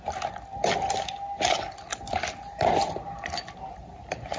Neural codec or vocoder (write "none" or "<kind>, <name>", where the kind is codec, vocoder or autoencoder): none